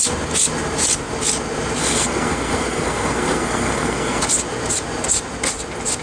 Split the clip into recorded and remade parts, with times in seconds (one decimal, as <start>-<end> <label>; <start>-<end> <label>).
0.0-1.8 recorded; 1.8-4.2 remade; 4.2-6.0 recorded